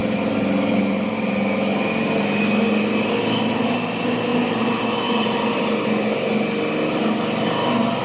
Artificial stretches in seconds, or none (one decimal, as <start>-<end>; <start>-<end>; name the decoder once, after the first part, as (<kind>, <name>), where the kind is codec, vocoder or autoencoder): none